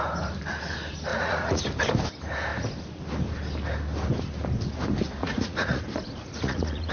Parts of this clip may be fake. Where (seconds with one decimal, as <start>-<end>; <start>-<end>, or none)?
1.1-1.6; 5.2-5.8; 6.2-6.9